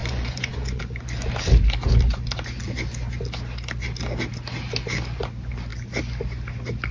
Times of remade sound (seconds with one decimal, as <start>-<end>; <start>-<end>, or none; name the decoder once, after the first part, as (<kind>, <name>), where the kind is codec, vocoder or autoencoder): 0.0-0.8 (vocoder, Vocos)